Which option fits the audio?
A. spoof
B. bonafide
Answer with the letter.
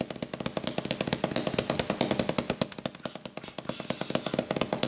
B